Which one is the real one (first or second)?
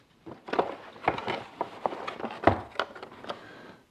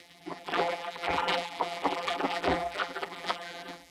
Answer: first